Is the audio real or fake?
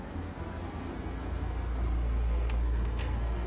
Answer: fake